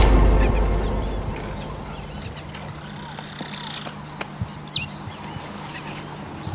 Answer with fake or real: real